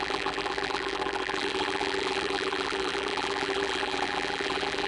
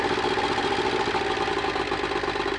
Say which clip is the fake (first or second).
first